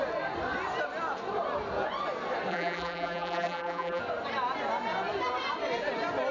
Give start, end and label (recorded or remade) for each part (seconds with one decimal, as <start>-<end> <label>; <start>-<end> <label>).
0.0-2.5 recorded; 2.5-4.0 remade; 4.0-6.3 recorded